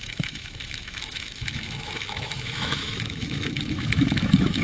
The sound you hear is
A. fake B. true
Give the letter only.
A